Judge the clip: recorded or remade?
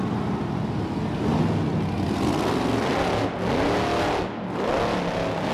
recorded